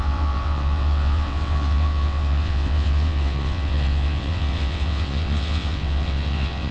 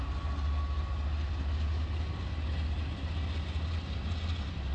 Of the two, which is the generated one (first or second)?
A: first